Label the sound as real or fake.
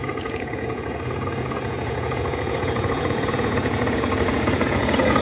fake